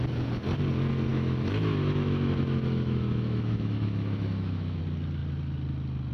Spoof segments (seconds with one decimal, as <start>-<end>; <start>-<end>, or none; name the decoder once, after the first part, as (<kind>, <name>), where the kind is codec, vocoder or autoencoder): 1.1-4.8 (autoencoder, DAC-VAE)